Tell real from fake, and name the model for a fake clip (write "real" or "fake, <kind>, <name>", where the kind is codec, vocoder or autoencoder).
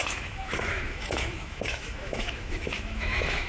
fake, autoencoder, DAC-VAE